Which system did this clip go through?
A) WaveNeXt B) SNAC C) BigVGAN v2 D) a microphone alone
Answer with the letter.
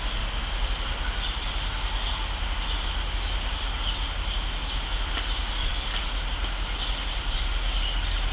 D